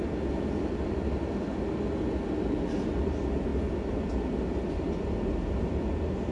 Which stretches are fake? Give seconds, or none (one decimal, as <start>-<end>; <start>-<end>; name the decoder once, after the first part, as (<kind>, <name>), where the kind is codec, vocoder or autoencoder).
none